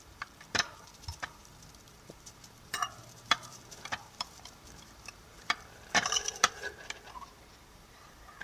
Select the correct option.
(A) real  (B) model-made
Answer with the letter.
B